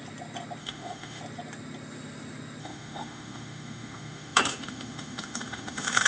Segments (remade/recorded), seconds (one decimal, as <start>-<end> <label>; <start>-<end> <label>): 0.0-0.6 recorded; 0.6-1.2 remade; 1.2-2.6 recorded; 2.6-6.1 remade